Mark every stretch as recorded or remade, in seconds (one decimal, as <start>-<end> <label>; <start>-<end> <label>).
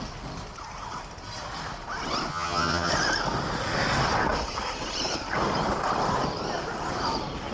0.0-2.3 recorded; 2.3-2.9 remade; 2.9-7.5 recorded